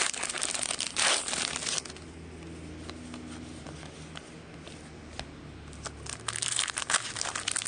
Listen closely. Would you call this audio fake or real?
real